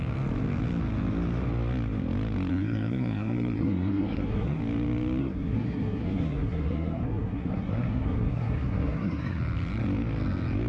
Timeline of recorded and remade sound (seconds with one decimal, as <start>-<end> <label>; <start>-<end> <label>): 0.0-2.5 recorded; 2.5-4.6 remade; 4.6-5.2 recorded; 5.2-9.4 remade; 9.4-10.7 recorded